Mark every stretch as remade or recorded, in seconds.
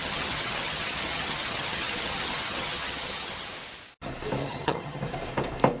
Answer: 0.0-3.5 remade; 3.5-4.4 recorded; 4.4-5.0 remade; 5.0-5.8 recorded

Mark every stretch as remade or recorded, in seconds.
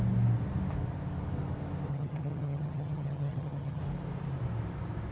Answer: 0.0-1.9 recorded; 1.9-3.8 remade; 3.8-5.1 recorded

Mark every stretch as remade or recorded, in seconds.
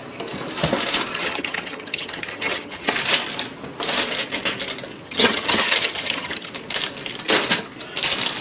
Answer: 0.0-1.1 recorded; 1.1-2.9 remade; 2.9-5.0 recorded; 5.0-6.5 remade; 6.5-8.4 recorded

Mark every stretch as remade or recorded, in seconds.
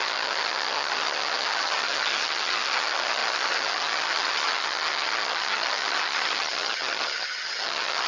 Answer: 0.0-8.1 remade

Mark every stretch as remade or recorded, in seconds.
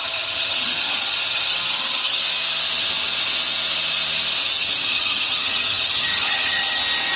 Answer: 0.0-2.2 remade; 2.2-4.4 recorded; 4.4-6.8 remade; 6.8-7.2 recorded